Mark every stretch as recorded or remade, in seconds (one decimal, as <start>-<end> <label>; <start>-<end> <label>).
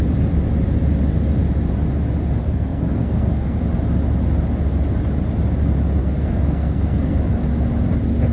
0.0-2.4 recorded; 2.4-3.6 remade; 3.6-6.0 recorded; 6.0-7.2 remade; 7.2-8.3 recorded